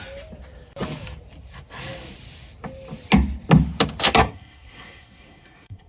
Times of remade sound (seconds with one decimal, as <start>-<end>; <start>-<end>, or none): 4.2-5.9